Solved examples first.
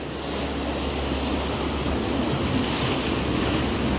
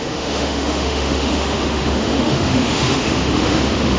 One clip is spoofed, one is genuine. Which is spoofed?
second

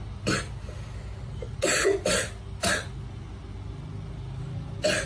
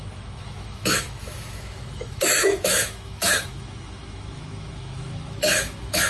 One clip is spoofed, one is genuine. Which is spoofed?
second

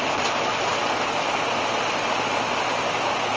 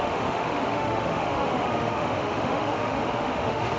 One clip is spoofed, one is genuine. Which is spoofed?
second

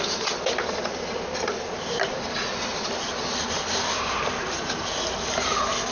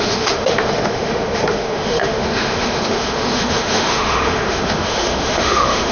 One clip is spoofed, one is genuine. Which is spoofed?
second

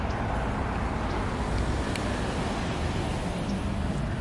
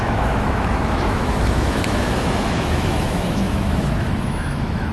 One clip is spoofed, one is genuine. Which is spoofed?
second